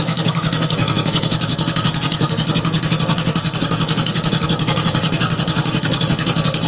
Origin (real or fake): fake